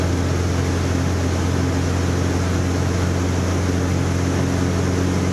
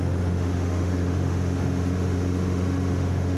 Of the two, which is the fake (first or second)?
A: second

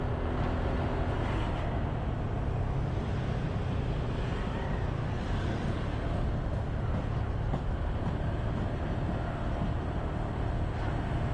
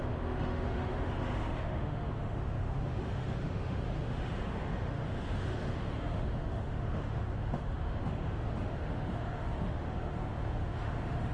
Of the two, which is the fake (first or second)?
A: second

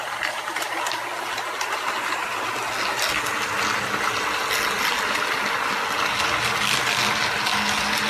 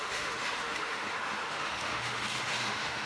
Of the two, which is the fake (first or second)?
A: second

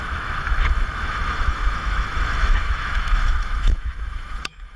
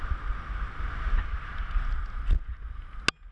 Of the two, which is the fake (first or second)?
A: first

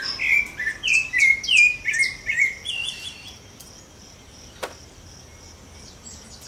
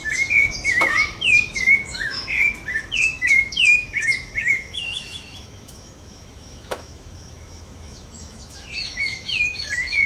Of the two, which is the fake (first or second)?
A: second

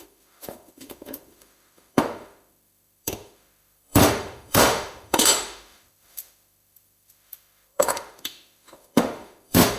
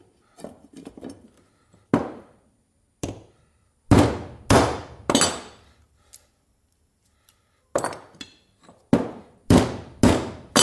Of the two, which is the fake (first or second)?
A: first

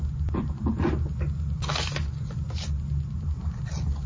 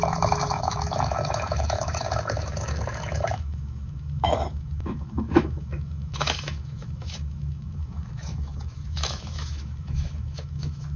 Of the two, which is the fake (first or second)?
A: second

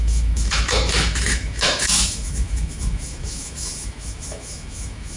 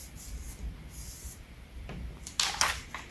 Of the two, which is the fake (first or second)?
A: first